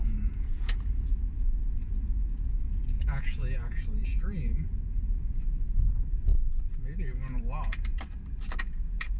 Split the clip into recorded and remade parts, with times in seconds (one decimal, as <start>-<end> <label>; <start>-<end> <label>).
0.0-6.3 remade; 6.3-7.0 recorded; 7.0-7.9 remade; 7.9-8.6 recorded; 8.6-9.2 remade